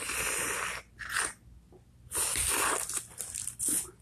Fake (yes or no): no